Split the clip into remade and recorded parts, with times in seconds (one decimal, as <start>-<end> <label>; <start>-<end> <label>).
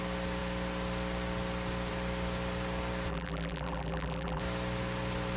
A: 0.0-3.1 recorded; 3.1-4.4 remade; 4.4-5.4 recorded